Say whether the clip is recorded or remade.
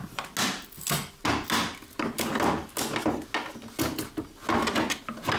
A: recorded